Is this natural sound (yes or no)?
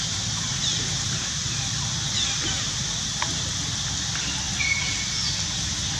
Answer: yes